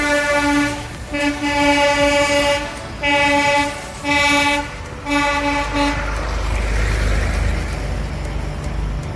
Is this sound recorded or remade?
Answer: recorded